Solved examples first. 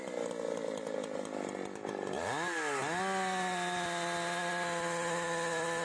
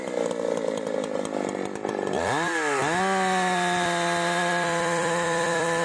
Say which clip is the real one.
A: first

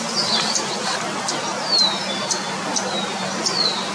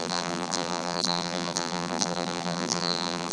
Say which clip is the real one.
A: first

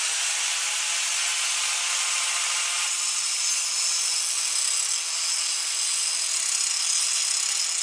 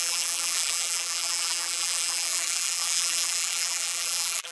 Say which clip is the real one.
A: first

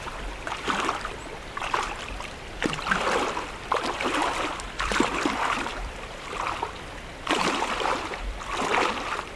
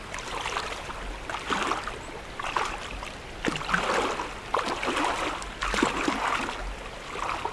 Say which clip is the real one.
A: second